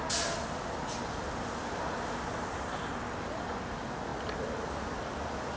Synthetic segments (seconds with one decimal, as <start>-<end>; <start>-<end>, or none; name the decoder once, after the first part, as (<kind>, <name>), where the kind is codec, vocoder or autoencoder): none